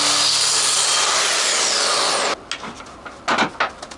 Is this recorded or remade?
recorded